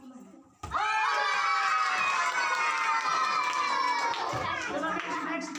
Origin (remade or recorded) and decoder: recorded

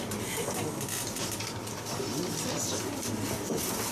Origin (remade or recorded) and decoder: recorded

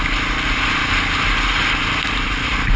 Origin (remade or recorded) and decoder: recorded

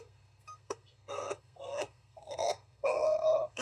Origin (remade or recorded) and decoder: remade, codec, SNAC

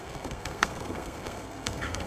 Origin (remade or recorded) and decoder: remade, codec, SNAC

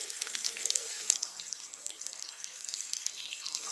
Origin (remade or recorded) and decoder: remade, codec, SNAC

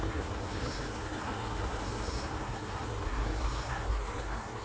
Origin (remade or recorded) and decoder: remade, codec, SNAC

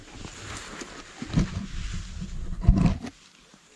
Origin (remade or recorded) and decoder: recorded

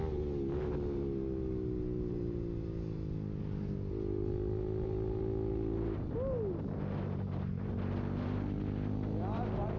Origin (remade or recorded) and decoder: recorded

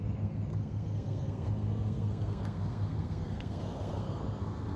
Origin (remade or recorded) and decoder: remade, codec, SNAC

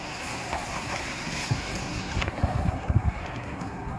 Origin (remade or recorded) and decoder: remade, codec, SNAC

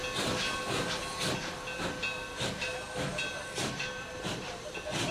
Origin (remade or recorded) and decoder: recorded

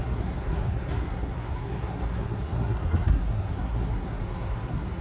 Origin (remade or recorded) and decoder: remade, codec, SNAC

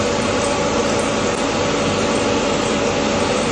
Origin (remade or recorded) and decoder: recorded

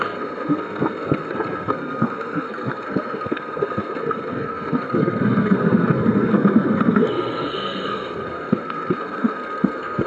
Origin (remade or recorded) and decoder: remade, codec, SNAC